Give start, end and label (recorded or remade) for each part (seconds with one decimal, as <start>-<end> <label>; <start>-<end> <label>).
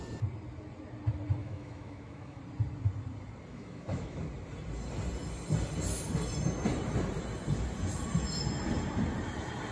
0.0-1.4 recorded; 1.4-2.4 remade; 2.4-3.5 recorded; 3.5-4.2 remade; 4.2-9.7 recorded